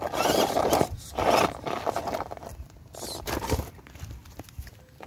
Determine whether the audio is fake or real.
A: real